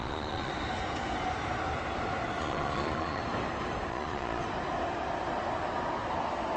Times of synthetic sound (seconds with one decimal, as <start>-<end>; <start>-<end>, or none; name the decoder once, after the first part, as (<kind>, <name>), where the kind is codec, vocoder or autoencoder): 0.0-0.5 (vocoder, Vocos); 2.4-3.2; 3.9-4.4